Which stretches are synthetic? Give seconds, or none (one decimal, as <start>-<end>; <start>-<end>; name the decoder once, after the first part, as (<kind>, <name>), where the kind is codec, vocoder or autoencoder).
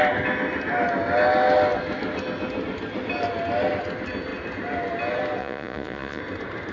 5.4-6.2 (vocoder, Vocos)